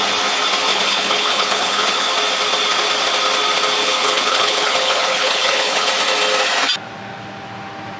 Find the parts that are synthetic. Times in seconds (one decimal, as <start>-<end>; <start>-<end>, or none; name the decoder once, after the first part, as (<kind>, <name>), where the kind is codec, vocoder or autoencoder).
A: 0.7-2.1 (codec, HILCodec); 3.8-5.9